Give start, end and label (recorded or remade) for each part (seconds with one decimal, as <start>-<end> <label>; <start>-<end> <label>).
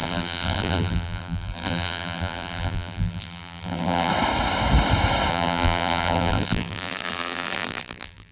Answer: 0.0-4.1 remade; 4.1-5.3 recorded; 5.3-8.3 remade